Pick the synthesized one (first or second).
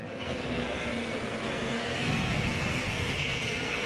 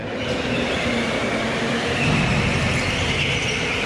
first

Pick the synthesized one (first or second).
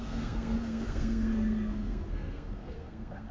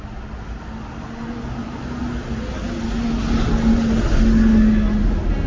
first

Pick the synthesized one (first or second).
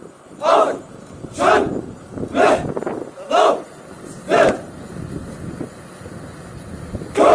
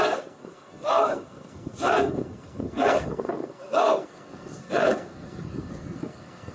second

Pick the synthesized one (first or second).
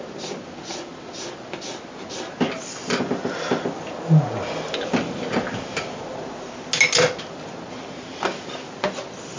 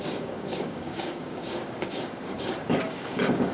second